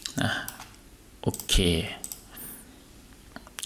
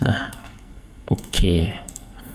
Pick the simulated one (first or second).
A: second